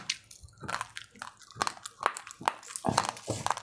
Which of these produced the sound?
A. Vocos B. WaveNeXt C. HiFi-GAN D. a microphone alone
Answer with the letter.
D